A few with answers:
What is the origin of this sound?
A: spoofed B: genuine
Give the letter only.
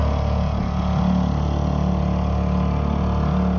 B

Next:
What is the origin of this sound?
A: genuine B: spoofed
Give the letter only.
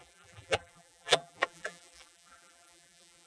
B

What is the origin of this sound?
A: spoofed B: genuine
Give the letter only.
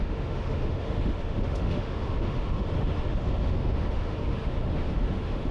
A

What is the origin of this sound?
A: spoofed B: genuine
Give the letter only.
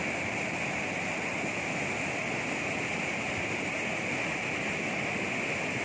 B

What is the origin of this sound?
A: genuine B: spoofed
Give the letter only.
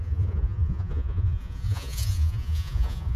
B